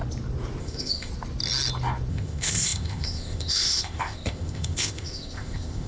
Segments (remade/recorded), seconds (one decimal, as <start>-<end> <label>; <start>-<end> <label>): 0.0-0.6 recorded; 0.6-1.1 remade; 1.1-2.1 recorded; 2.1-5.9 remade